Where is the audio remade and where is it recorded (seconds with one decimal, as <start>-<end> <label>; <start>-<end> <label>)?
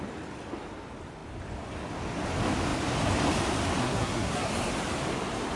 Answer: 0.0-3.8 recorded; 3.8-4.5 remade; 4.5-5.6 recorded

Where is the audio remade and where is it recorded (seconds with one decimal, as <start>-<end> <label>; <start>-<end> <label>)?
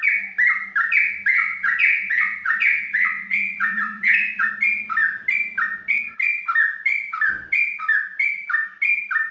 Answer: 0.0-1.3 recorded; 1.3-4.5 remade; 4.5-9.3 recorded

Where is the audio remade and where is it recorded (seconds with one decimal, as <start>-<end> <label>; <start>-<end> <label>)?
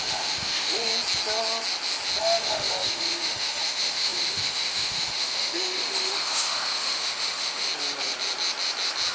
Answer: 0.0-0.9 remade; 0.9-2.2 recorded; 2.2-7.7 remade; 7.7-9.1 recorded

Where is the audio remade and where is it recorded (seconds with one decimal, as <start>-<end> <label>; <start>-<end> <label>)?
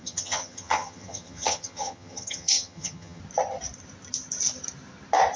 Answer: 0.0-3.2 remade; 3.2-5.4 recorded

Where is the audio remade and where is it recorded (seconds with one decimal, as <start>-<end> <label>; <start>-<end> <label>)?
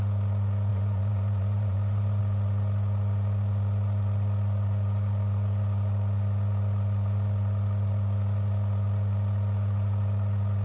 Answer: 0.0-0.7 recorded; 0.7-2.2 remade; 2.2-10.6 recorded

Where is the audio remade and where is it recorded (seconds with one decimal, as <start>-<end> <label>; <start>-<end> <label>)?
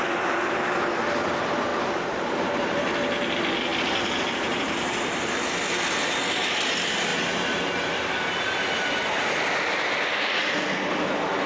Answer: 0.0-1.7 recorded; 1.7-2.8 remade; 2.8-11.5 recorded